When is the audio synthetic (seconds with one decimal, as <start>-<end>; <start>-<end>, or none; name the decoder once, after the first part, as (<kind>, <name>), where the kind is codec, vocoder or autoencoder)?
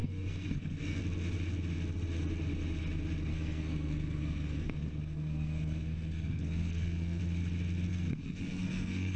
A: 0.0-1.0 (codec, SNAC); 3.3-7.2; 7.9-9.2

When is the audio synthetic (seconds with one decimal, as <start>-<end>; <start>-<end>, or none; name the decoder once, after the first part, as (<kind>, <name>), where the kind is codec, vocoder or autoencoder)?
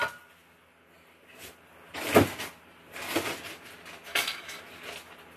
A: 4.1-4.6 (codec, DAC)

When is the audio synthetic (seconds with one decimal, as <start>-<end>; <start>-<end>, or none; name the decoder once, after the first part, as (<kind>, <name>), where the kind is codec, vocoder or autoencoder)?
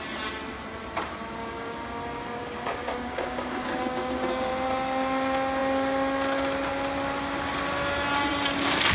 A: 1.4-4.5 (codec, DAC)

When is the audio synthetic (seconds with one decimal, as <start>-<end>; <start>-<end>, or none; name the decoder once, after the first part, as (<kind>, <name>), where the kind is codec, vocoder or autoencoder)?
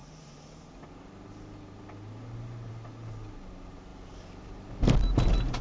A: none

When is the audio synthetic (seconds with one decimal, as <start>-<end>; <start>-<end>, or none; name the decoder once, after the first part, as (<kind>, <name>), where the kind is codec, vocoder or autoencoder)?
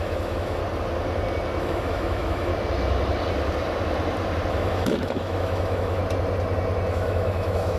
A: 0.0-0.6 (autoencoder, DAC-VAE); 1.6-2.5; 4.5-6.0; 6.9-7.8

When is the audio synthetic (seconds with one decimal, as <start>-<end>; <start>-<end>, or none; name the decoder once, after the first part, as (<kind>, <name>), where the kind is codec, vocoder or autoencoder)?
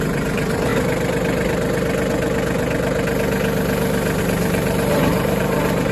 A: 0.0-0.7 (vocoder, BigVGAN v2); 4.2-5.9